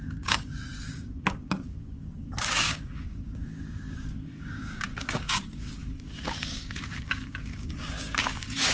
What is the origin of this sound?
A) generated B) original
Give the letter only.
A